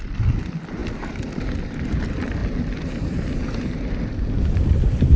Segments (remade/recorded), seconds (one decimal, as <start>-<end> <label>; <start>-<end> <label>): 0.0-2.4 remade; 2.4-4.6 recorded; 4.6-5.2 remade